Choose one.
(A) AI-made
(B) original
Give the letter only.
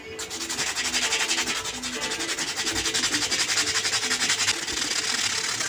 B